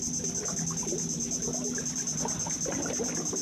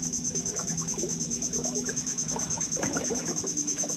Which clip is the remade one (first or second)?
second